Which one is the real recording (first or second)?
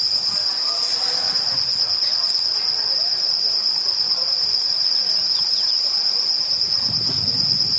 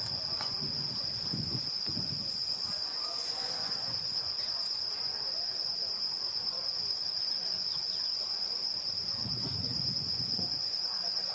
first